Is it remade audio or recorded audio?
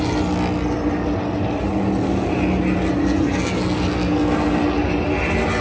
recorded